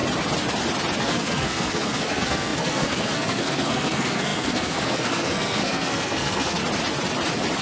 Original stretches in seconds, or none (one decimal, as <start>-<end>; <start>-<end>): 0.0-1.0; 6.6-7.6